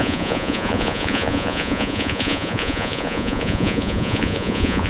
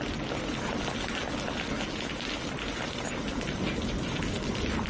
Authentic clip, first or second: second